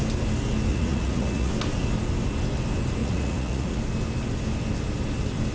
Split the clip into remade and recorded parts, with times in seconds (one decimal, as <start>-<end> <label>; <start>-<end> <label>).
0.0-0.7 recorded; 0.7-1.5 remade; 1.5-3.0 recorded; 3.0-3.8 remade; 3.8-5.5 recorded